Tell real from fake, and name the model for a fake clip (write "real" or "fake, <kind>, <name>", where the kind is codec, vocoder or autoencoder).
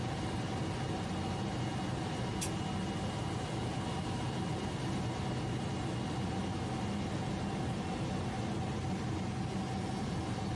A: real